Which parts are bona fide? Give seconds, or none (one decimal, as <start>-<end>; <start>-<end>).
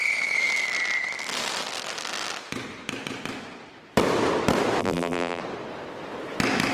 0.0-4.8; 5.4-6.7